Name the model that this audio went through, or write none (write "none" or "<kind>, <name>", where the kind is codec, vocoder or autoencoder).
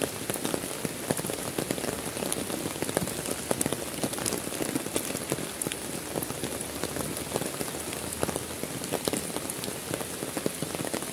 none